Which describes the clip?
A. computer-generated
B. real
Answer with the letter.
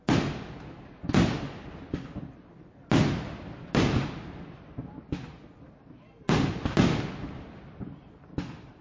B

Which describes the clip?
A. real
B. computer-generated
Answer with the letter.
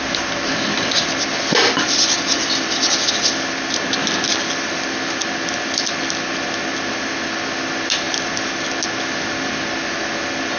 A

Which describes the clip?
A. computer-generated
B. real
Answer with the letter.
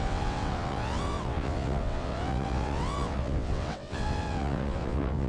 A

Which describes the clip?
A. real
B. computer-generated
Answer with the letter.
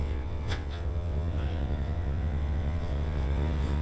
B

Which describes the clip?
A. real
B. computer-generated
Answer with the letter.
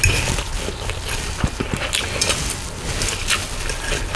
A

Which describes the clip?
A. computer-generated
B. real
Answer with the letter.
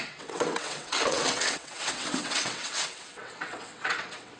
A